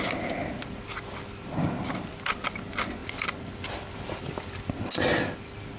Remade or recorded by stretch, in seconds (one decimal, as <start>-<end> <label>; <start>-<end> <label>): 0.0-5.8 recorded